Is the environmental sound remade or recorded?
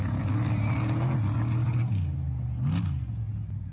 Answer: recorded